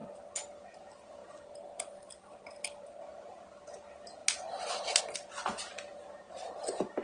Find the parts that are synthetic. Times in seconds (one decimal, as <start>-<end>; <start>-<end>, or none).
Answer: none